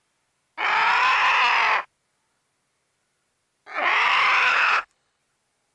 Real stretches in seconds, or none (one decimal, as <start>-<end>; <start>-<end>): 0.0-4.5; 5.2-5.7